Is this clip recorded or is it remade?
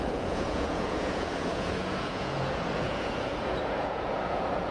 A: remade